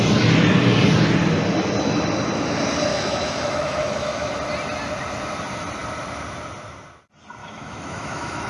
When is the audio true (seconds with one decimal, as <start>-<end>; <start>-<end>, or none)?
0.0-2.9; 4.3-7.4